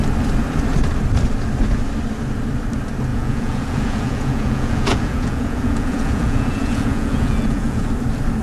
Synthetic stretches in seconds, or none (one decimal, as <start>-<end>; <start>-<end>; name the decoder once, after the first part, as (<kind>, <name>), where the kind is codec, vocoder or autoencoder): 3.1-7.9 (vocoder, Vocos)